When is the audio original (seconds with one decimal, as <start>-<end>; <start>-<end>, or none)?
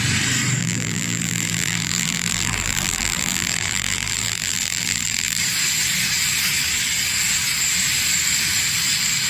0.0-0.6; 5.4-9.3